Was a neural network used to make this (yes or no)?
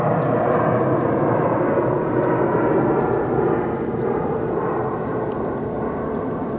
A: no